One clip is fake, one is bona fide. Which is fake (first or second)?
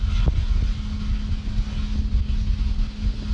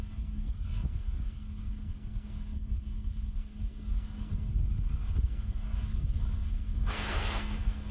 second